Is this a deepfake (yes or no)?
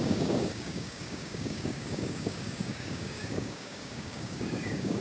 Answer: yes